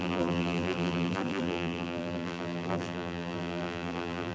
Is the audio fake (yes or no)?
yes